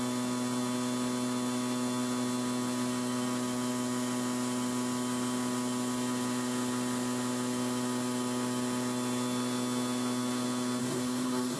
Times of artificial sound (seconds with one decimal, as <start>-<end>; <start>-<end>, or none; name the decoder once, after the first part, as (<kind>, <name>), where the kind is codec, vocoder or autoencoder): 10.8-11.6 (codec, SNAC)